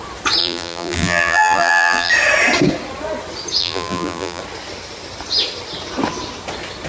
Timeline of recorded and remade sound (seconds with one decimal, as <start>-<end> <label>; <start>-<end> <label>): 0.0-0.4 recorded; 0.4-2.1 remade; 2.1-3.6 recorded; 3.6-4.4 remade; 4.4-6.9 recorded

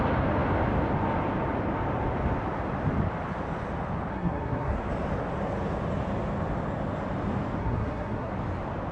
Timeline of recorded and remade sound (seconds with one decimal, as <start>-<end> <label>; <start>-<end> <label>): 0.0-4.1 recorded; 4.1-4.9 remade; 4.9-7.6 recorded; 7.6-8.3 remade; 8.3-8.9 recorded